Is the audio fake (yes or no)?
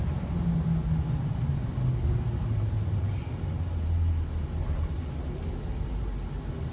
no